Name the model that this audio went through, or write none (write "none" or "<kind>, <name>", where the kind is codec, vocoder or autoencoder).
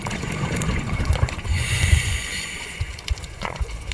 vocoder, Vocos